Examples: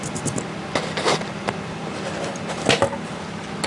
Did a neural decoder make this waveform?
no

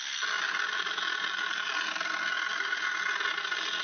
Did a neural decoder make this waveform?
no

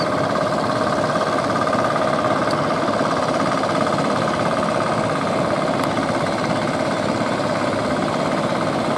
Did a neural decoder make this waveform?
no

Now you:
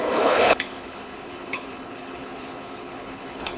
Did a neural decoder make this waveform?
yes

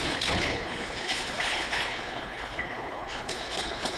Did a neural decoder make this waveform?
yes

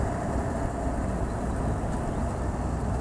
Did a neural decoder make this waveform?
no